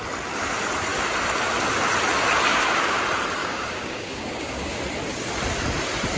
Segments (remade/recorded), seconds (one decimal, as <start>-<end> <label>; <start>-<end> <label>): 0.0-2.5 recorded; 2.5-3.0 remade; 3.0-3.4 recorded; 3.4-4.8 remade; 4.8-6.2 recorded